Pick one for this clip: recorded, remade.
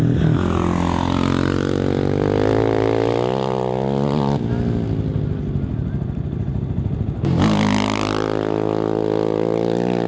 recorded